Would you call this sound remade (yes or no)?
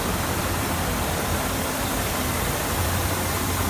yes